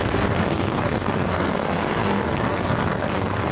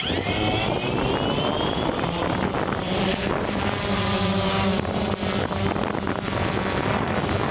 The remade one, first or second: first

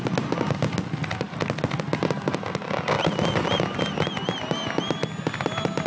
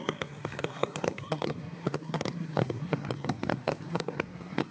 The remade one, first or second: second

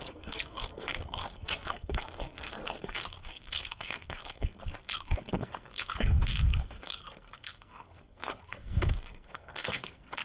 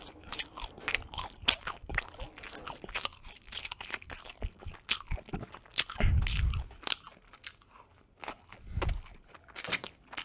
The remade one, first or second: first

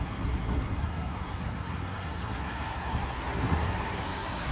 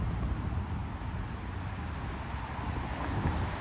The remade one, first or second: first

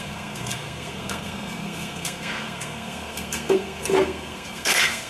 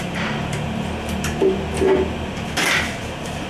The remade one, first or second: first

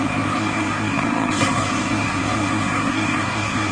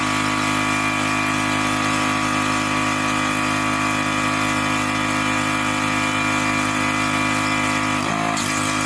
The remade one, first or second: first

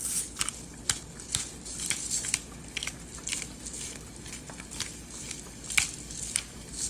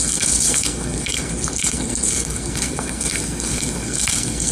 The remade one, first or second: second